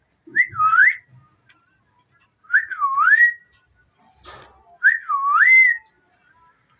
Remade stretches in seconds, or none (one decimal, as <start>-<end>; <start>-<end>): 0.8-1.8